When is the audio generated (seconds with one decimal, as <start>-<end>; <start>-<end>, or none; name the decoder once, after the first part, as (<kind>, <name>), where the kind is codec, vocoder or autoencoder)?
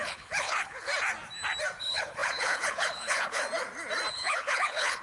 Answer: 0.0-0.9 (codec, HILCodec); 1.8-3.4; 4.1-5.0